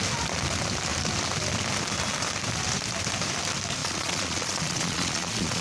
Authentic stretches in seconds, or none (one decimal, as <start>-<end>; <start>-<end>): 0.0-3.8